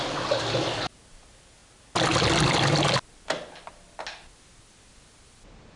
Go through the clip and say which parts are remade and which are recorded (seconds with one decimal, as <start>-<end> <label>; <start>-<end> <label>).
0.0-5.8 recorded

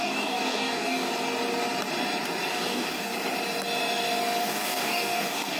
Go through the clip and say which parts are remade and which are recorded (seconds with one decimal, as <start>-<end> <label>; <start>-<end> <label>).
0.0-1.1 remade; 1.1-2.5 recorded; 2.5-3.1 remade; 3.1-4.4 recorded; 4.4-5.6 remade